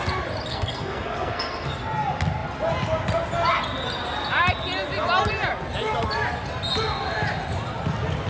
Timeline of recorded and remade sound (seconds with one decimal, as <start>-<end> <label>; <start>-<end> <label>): 0.0-0.5 recorded; 0.5-1.8 remade; 1.8-8.3 recorded